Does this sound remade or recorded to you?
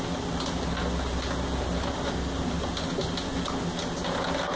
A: recorded